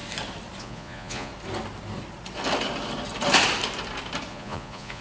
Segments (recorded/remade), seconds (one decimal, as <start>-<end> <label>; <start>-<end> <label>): 0.0-0.6 recorded; 0.6-1.3 remade; 1.3-4.3 recorded; 4.3-5.0 remade